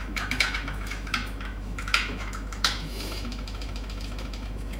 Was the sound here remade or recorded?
remade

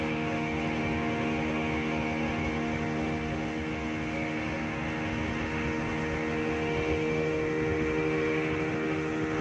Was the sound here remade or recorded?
remade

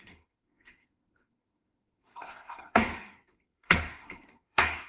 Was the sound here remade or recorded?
remade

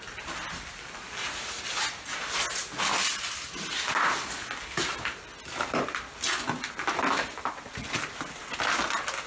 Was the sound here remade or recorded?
recorded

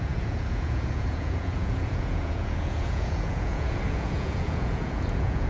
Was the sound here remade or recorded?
remade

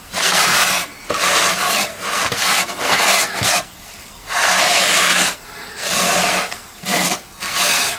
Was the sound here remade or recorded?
remade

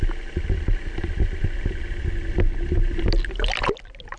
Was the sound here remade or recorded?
recorded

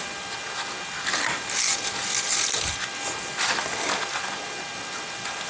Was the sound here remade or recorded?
recorded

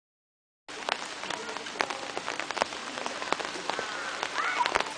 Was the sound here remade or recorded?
recorded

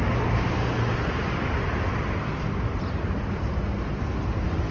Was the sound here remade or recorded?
recorded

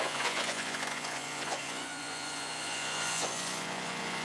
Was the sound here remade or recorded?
remade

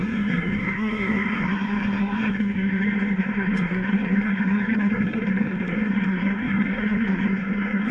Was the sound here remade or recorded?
remade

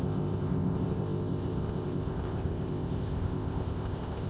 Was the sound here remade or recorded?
remade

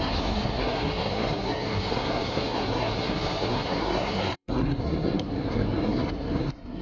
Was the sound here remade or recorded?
remade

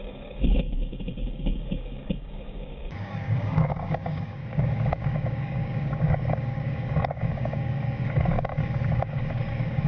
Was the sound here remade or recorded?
remade